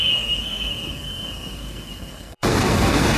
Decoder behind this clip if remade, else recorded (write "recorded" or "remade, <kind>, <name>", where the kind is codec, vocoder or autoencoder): remade, codec, SNAC